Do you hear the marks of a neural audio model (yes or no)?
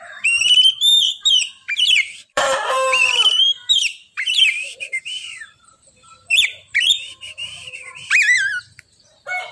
yes